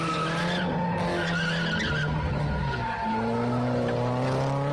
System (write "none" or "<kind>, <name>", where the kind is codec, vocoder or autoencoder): none